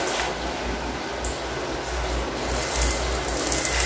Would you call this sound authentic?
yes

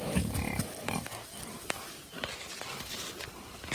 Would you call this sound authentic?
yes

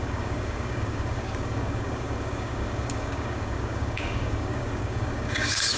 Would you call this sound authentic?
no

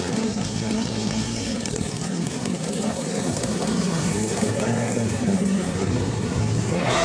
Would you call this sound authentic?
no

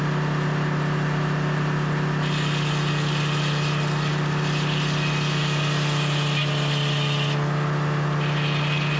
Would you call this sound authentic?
yes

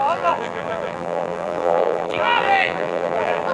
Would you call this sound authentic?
no